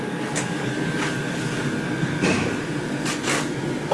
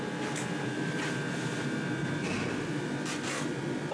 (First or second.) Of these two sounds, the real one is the second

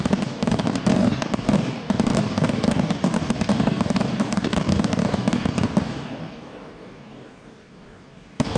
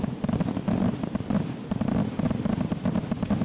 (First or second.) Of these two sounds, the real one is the second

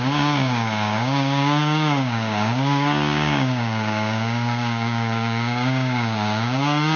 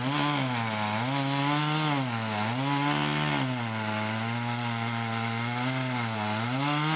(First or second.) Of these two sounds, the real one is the second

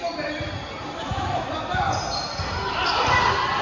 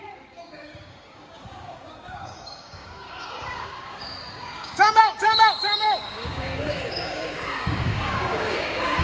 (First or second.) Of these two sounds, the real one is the first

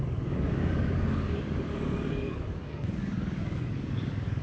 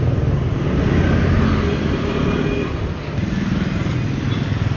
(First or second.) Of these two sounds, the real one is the second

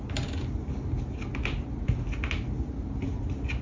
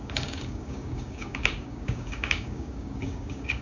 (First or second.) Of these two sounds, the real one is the first